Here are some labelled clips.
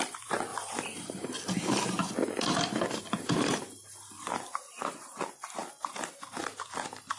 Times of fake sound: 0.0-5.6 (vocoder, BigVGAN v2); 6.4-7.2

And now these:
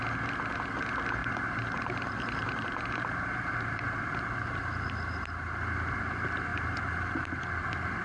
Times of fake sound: 1.2-6.0 (vocoder, BigVGAN v2); 6.5-7.3